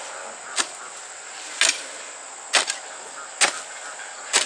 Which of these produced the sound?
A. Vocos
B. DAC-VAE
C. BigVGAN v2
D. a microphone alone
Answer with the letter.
D